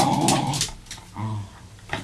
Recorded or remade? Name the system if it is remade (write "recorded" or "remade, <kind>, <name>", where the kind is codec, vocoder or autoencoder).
recorded